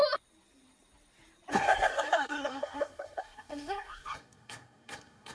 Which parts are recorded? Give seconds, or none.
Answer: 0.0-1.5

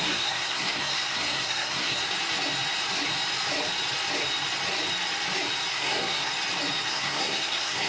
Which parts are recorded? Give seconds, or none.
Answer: 2.0-5.7; 6.3-6.9

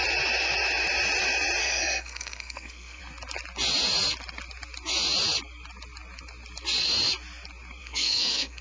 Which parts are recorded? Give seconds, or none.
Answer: 0.0-1.6; 3.0-7.8

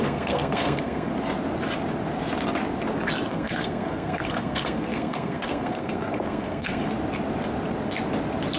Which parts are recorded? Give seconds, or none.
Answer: 1.1-3.3; 6.8-8.6

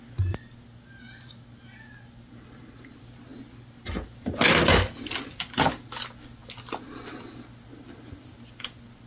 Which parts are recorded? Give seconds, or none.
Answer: 0.0-9.1